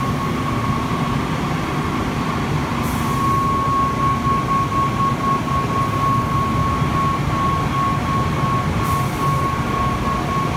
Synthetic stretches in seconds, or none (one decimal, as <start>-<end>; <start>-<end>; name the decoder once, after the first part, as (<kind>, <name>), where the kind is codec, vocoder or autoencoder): none